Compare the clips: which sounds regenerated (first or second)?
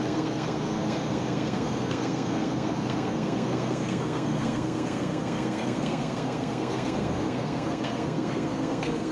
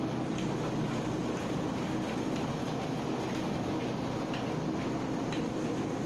first